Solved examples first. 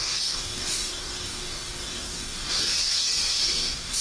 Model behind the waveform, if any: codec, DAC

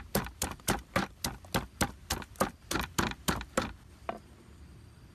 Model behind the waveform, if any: none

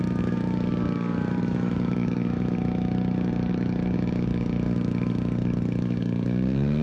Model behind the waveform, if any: codec, DAC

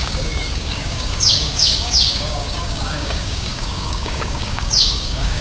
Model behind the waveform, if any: codec, DAC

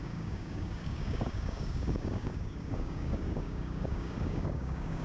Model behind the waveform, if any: codec, DAC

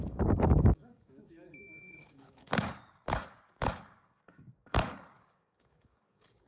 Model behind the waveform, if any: codec, DAC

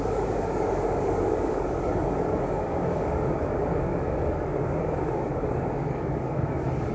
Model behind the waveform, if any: codec, DAC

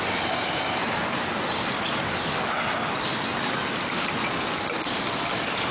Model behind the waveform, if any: none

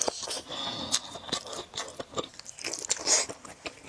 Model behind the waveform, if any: none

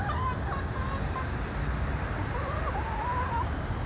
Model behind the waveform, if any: none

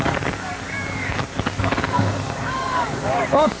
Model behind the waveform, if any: codec, DAC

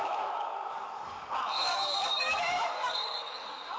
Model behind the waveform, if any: codec, DAC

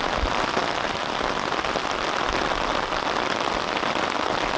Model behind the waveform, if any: none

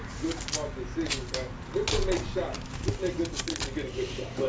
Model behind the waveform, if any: none